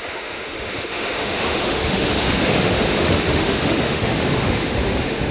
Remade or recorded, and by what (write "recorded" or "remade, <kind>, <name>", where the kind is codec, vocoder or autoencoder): remade, autoencoder, DAC-VAE